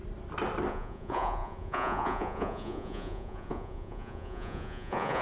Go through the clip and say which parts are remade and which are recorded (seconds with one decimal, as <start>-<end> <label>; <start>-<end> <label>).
0.0-0.7 recorded; 0.7-5.2 remade